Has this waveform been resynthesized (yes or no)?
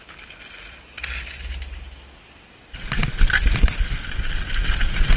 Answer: no